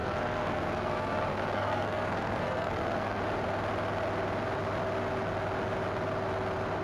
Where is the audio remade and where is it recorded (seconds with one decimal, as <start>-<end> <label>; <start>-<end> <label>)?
0.0-3.2 remade; 3.2-6.8 recorded